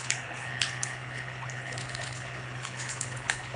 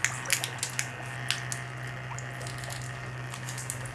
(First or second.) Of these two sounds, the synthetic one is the first